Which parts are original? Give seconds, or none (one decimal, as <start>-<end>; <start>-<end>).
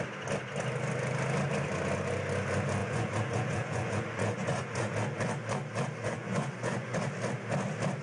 0.0-2.8; 4.9-6.0; 7.0-8.0